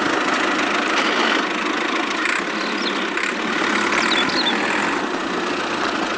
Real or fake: real